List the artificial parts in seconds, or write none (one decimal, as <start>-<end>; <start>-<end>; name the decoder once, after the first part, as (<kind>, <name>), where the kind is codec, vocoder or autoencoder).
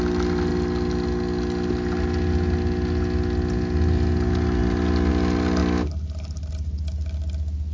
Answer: none